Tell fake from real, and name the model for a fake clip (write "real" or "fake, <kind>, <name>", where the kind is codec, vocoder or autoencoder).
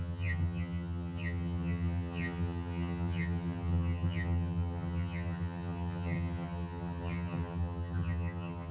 fake, vocoder, HiFi-GAN